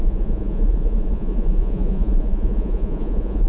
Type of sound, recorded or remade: remade